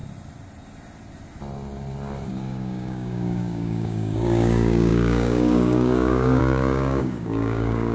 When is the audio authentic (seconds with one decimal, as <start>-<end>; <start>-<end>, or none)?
0.0-2.3